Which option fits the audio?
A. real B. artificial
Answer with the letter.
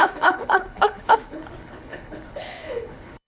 B